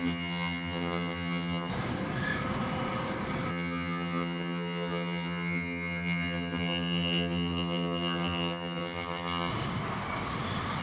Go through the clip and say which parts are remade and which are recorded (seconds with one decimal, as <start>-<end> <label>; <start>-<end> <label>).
0.0-1.7 remade; 1.7-3.5 recorded; 3.5-9.5 remade; 9.5-10.8 recorded